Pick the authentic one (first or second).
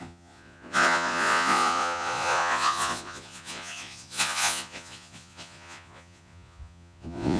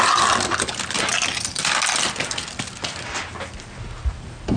second